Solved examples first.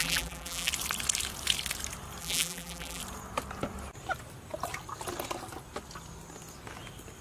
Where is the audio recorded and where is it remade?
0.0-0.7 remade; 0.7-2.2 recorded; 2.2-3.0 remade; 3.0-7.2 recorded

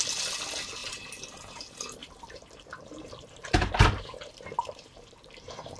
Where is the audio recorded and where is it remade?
0.0-0.8 recorded; 0.8-1.6 remade; 1.6-2.0 recorded; 2.0-5.8 remade

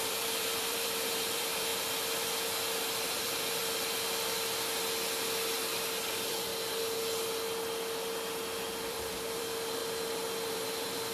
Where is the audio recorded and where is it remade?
0.0-1.7 remade; 1.7-3.0 recorded; 3.0-3.6 remade; 3.6-6.1 recorded; 6.1-6.5 remade; 6.5-8.9 recorded; 8.9-9.8 remade; 9.8-10.5 recorded; 10.5-11.1 remade

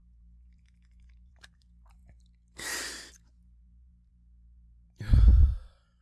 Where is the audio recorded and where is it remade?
0.0-2.0 remade; 2.0-3.1 recorded; 3.1-6.0 remade

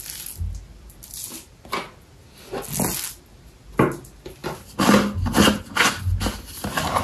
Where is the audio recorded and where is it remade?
0.0-7.0 recorded

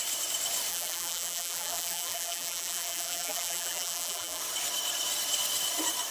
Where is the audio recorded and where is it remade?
0.0-0.7 recorded; 0.7-4.4 remade; 4.4-6.1 recorded

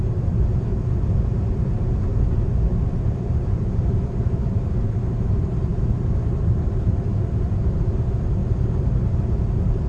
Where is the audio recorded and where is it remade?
0.0-2.1 remade; 2.1-2.9 recorded; 2.9-8.4 remade; 8.4-9.4 recorded; 9.4-9.9 remade

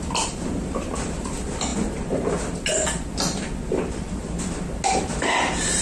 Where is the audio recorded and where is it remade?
0.0-5.8 recorded